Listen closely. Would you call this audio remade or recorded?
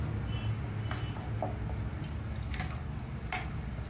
recorded